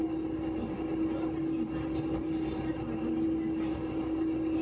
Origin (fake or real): real